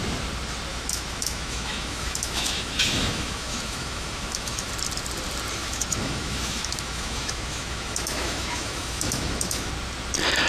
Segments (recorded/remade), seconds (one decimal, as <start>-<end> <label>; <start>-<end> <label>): 0.0-0.7 recorded; 0.7-4.7 remade; 4.7-5.6 recorded; 5.6-9.7 remade; 9.7-10.5 recorded